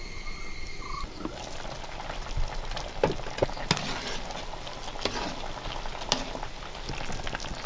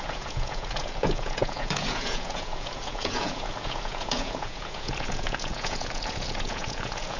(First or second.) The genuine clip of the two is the first